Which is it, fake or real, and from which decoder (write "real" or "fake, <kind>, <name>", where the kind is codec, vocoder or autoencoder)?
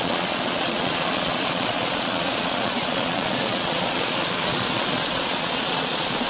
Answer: fake, vocoder, Vocos